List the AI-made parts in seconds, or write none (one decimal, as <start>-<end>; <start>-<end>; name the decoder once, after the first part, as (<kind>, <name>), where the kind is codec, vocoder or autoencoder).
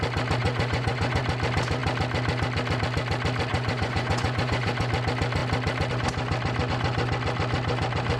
0.4-1.2 (vocoder, Vocos); 3.5-4.9